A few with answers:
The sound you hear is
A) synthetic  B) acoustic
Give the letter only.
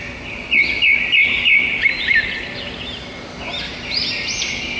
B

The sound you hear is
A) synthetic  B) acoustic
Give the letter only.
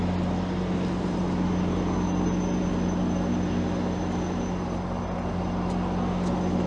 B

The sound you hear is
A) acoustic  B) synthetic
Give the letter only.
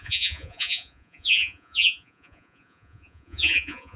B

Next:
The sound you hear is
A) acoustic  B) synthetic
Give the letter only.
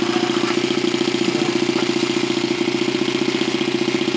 A